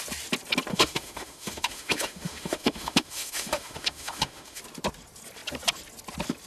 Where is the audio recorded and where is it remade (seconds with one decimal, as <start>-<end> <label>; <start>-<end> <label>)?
0.0-0.7 recorded; 0.7-4.6 remade; 4.6-6.5 recorded